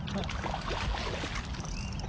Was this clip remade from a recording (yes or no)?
no